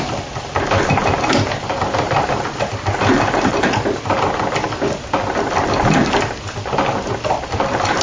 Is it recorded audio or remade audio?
recorded